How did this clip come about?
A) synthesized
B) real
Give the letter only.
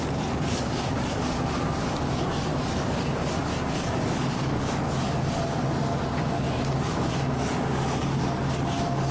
A